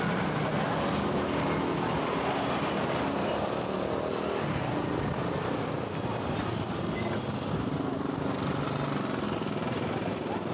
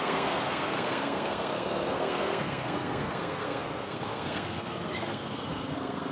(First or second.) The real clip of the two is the first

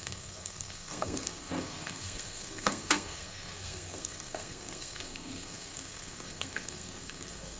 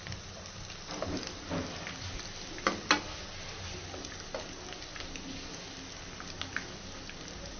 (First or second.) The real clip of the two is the second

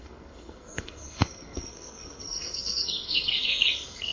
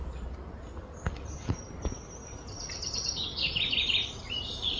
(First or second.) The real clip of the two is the second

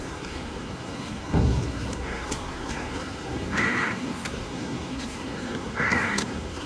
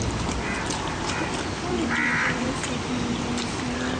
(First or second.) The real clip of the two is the second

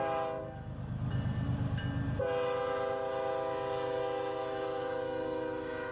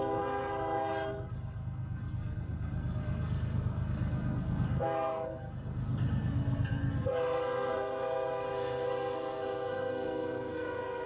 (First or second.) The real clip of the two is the first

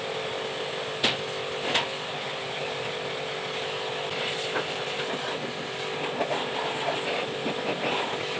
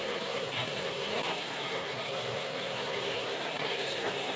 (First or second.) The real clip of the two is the first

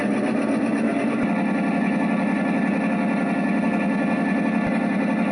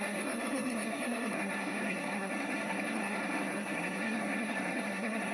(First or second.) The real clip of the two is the first